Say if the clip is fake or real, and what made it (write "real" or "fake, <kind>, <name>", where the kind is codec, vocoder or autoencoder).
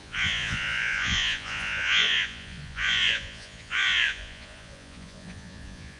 fake, vocoder, Vocos